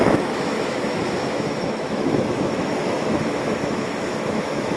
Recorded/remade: remade